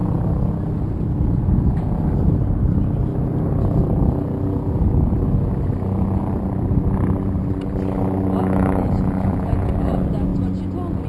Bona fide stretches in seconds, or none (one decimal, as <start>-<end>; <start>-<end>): 0.0-8.4; 9.7-11.1